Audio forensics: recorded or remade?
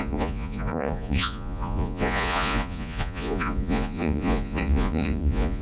remade